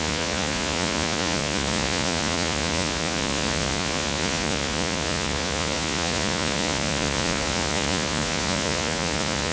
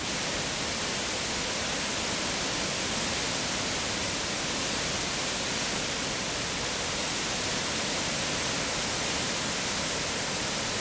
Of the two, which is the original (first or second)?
second